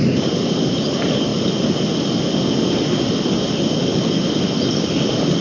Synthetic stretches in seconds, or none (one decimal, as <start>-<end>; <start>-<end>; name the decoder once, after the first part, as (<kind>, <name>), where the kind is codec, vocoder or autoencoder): none